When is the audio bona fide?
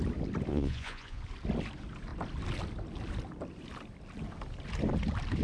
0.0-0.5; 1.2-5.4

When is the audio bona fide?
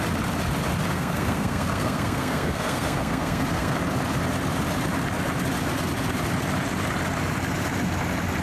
0.0-0.9; 3.8-8.4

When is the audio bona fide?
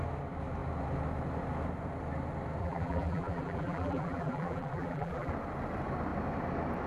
0.0-2.6; 5.3-6.9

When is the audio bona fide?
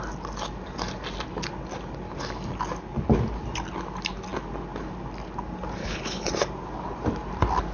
0.0-5.8; 6.3-7.7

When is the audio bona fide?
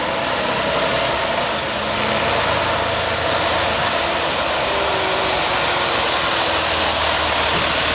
0.0-7.9